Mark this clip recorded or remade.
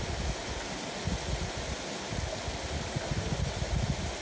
recorded